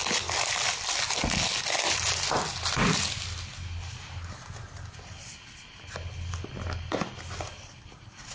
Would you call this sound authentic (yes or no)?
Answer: yes